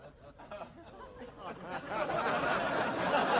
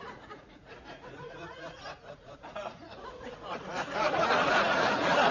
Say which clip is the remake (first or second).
second